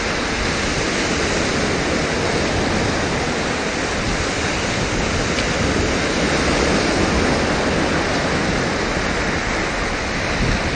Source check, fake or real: real